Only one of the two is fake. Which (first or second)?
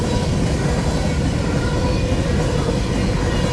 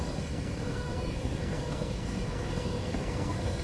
second